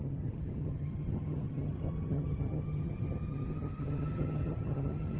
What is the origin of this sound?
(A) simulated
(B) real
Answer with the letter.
A